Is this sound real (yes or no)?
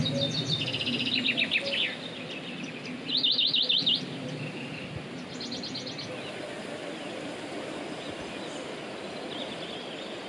yes